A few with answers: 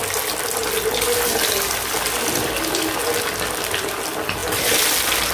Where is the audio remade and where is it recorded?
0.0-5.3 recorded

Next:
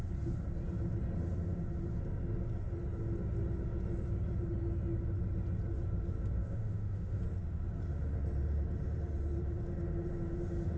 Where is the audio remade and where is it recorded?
0.0-6.4 recorded; 6.4-7.2 remade; 7.2-10.8 recorded

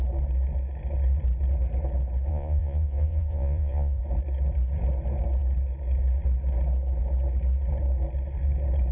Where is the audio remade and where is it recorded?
0.0-2.3 recorded; 2.3-4.0 remade; 4.0-8.9 recorded

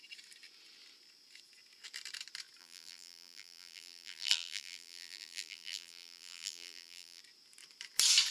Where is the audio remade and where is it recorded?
0.0-2.6 recorded; 2.6-7.2 remade; 7.2-8.3 recorded

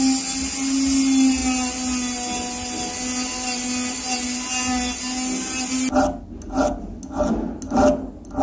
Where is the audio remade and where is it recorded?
0.0-8.4 recorded